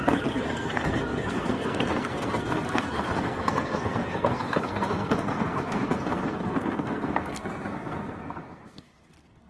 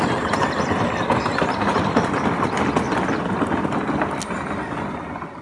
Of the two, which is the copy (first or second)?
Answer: first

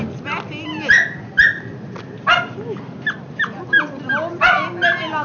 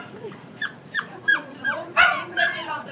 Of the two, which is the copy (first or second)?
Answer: second